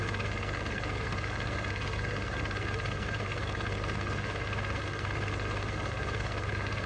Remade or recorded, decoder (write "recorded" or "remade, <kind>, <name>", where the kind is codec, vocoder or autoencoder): remade, codec, SNAC